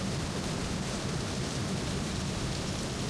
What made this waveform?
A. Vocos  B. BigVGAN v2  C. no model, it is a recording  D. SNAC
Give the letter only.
B